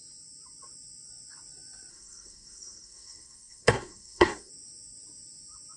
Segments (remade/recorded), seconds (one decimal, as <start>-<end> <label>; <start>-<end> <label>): 0.0-1.9 recorded; 1.9-4.5 remade; 4.5-5.8 recorded